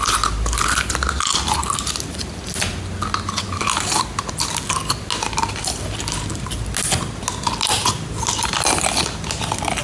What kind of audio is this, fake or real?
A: real